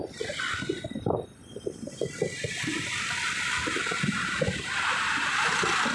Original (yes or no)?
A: yes